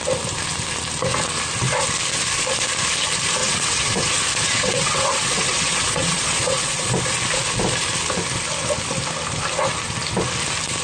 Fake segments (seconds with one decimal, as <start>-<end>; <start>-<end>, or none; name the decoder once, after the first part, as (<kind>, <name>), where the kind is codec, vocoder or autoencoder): 3.4-6.9 (vocoder, WaveNeXt)